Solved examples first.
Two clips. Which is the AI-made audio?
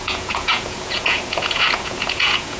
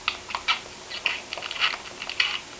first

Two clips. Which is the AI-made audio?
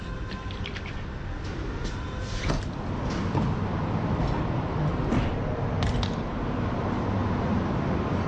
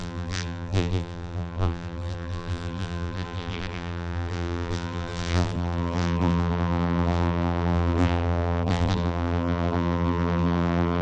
second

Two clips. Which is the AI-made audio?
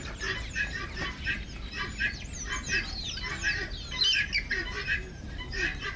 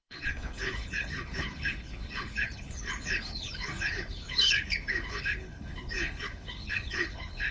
second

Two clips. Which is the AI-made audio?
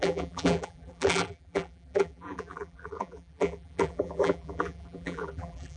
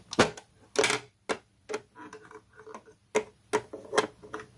first